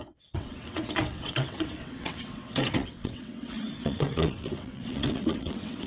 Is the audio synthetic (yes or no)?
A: yes